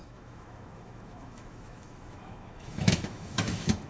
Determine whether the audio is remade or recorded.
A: remade